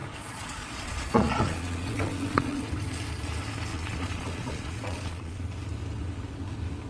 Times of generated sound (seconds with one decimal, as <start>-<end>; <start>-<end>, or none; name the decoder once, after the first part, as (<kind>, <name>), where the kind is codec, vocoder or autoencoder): 0.0-2.6 (vocoder, Vocos); 3.7-5.4